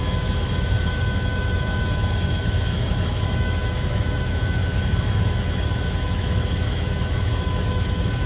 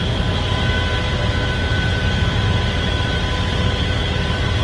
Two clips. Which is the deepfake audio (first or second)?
first